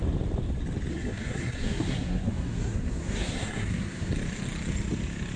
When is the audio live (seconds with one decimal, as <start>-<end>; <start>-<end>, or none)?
0.0-0.9; 4.1-5.4